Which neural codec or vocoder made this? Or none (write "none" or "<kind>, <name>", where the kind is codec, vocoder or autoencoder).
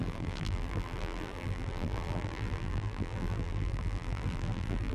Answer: vocoder, BigVGAN v2